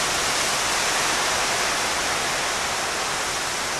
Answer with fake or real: real